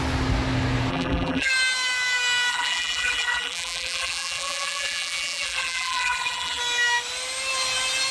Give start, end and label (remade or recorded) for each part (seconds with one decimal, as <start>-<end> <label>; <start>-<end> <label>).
0.0-0.9 recorded; 0.9-1.5 remade; 1.5-2.5 recorded; 2.5-6.6 remade; 6.6-8.1 recorded